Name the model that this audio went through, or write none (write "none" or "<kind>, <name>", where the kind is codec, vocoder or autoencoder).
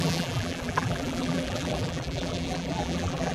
vocoder, BigVGAN v2